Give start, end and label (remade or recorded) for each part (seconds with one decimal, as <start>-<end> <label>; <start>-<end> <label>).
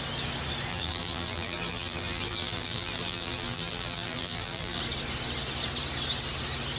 0.0-0.7 recorded; 0.7-4.8 remade; 4.8-6.8 recorded